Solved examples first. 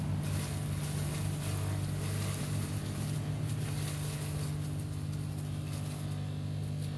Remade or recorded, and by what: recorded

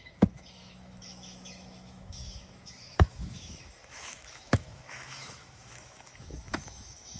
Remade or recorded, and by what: remade, autoencoder, DAC-VAE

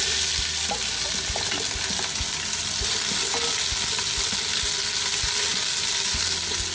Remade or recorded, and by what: recorded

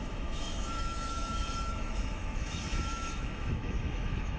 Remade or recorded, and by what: remade, autoencoder, DAC-VAE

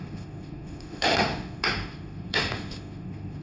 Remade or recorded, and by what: remade, autoencoder, DAC-VAE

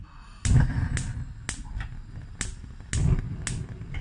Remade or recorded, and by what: recorded